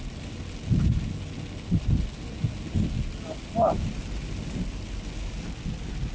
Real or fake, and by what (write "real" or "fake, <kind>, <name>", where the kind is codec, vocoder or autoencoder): real